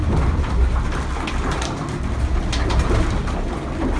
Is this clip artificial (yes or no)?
no